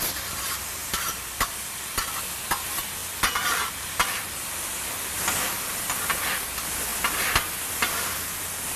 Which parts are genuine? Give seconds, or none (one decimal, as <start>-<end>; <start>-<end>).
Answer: 0.0-0.8; 2.0-3.0; 4.6-8.8